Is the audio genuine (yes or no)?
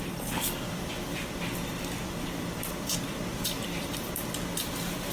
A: no